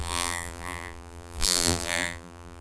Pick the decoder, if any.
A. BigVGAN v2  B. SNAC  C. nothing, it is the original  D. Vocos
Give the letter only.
A